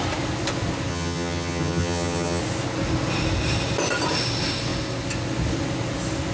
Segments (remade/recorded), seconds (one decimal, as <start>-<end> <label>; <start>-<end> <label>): 0.0-0.9 recorded; 0.9-2.4 remade; 2.4-6.3 recorded